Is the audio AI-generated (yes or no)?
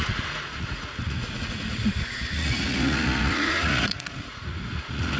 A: yes